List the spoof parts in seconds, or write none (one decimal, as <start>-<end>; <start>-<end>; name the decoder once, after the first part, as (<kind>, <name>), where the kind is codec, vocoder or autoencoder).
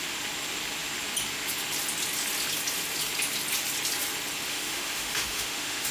4.5-5.9 (autoencoder, DAC-VAE)